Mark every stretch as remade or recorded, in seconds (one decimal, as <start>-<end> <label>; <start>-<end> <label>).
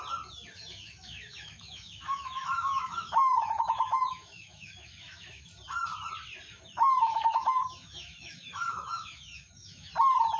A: 0.0-0.6 recorded; 0.6-5.5 remade; 5.5-6.5 recorded; 6.5-9.9 remade; 9.9-10.4 recorded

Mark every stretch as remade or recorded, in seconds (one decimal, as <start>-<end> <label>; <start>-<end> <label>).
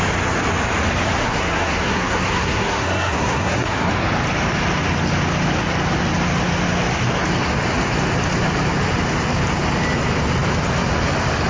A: 0.0-1.2 recorded; 1.2-3.9 remade; 3.9-11.5 recorded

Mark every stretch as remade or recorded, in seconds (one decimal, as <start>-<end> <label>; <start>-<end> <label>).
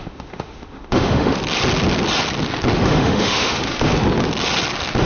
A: 0.0-1.4 remade; 1.4-2.8 recorded; 2.8-3.9 remade; 3.9-5.0 recorded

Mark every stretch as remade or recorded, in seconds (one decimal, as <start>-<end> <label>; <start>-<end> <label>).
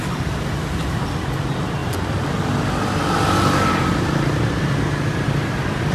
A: 0.0-5.9 recorded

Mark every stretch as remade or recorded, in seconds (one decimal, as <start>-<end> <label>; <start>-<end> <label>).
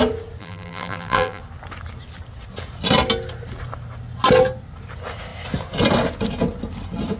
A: 0.0-0.4 recorded; 0.4-1.4 remade; 1.4-7.2 recorded